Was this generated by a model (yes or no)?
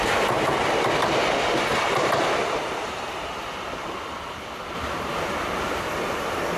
no